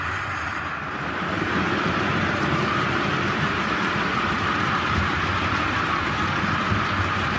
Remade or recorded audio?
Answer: remade